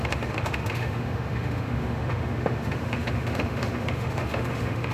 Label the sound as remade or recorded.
remade